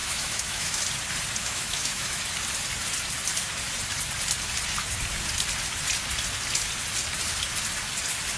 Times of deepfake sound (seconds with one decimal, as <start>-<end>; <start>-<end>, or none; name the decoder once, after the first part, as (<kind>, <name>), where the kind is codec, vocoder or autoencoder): 0.0-0.8 (autoencoder, DAC-VAE); 1.4-2.2

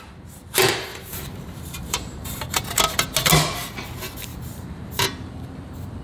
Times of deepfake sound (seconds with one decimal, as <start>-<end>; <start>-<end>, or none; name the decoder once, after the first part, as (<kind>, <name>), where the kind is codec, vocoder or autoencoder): 0.9-2.8 (vocoder, BigVGAN v2); 4.3-6.0

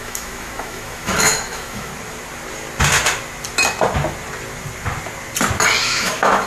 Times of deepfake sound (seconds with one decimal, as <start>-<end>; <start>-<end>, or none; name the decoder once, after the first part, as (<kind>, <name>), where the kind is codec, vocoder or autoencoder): 0.0-1.9 (autoencoder, DAC-VAE); 5.8-6.5

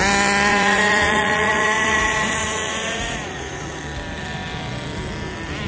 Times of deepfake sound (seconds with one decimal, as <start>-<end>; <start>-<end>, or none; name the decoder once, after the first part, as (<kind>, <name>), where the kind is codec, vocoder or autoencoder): 0.5-3.8 (vocoder, Vocos)

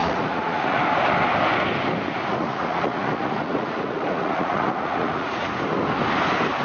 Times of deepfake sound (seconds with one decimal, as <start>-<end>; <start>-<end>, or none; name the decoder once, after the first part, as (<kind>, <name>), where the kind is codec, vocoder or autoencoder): 0.0-0.8 (vocoder, Vocos); 2.3-5.5

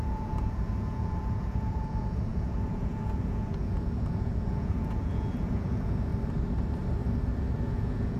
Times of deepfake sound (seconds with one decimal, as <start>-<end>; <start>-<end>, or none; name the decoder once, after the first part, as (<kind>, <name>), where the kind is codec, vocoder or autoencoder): 0.0-6.1 (vocoder, Vocos); 7.6-8.2

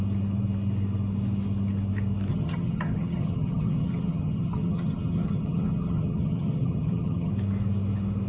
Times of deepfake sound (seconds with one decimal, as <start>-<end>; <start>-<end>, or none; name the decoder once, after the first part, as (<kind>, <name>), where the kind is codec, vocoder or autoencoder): 2.3-7.3 (vocoder, HiFi-GAN)

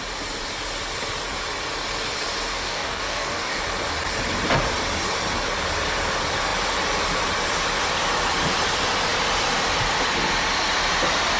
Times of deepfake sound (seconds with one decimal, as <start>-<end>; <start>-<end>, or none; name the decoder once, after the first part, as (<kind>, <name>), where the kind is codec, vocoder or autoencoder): 2.5-3.6 (codec, DAC)